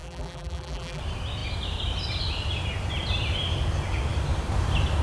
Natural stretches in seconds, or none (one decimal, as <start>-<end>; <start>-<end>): 1.0-5.0